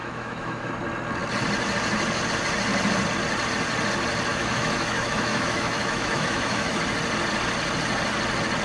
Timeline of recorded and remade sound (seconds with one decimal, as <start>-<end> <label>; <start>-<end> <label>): 0.0-0.7 remade; 0.7-4.3 recorded; 4.3-6.8 remade; 6.8-8.6 recorded